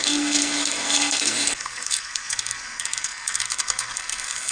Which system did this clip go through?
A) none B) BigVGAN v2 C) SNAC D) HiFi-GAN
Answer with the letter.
C